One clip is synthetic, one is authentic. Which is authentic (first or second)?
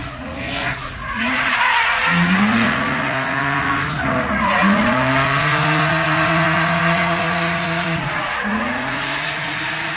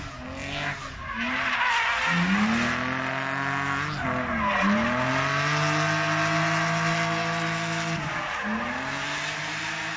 second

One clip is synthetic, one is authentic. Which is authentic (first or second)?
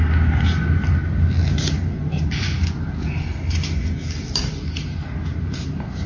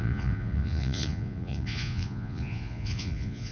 first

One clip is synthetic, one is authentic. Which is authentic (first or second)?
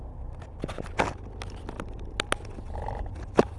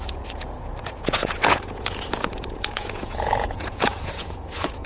first